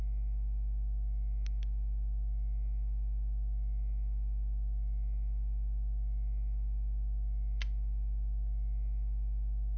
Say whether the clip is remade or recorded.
recorded